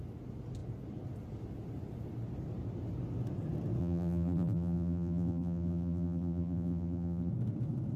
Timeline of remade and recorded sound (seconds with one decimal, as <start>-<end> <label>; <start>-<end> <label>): 0.0-3.8 recorded; 3.8-7.3 remade; 7.3-8.0 recorded

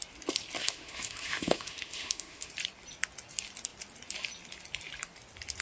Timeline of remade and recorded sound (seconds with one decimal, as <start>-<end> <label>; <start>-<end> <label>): 0.0-0.6 recorded; 0.6-2.5 remade; 2.5-5.6 recorded

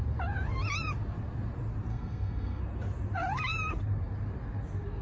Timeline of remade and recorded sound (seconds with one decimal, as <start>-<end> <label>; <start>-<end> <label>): 0.0-1.9 recorded; 1.9-2.6 remade; 2.6-5.0 recorded

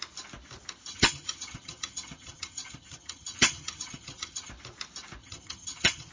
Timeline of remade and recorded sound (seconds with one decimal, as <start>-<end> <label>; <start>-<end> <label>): 0.0-0.9 recorded; 0.9-4.5 remade; 4.5-5.2 recorded; 5.2-6.1 remade

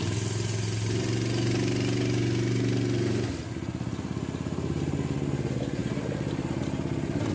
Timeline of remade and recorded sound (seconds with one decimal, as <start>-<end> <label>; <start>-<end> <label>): 0.0-7.3 recorded

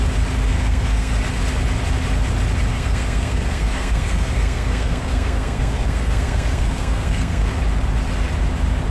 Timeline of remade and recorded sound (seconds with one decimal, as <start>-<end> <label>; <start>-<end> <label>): 0.0-0.5 recorded; 0.5-1.1 remade; 1.1-2.7 recorded; 2.7-7.6 remade; 7.6-8.9 recorded